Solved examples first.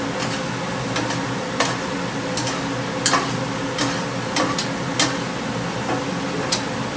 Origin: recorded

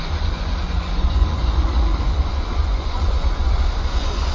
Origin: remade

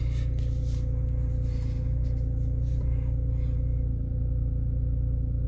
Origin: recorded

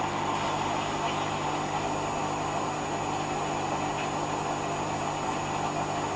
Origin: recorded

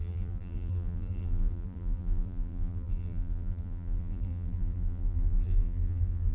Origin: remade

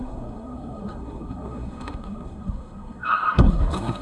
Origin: remade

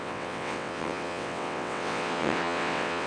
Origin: remade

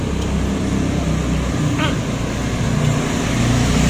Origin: recorded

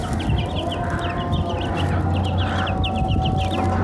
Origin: recorded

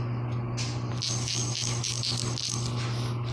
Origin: recorded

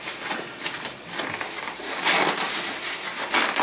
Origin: remade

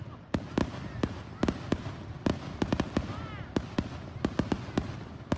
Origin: recorded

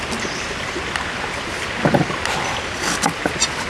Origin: recorded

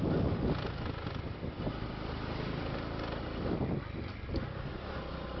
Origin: recorded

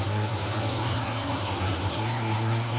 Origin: remade